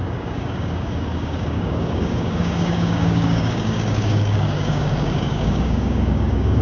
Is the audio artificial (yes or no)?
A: yes